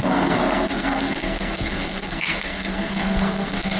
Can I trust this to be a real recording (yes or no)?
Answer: no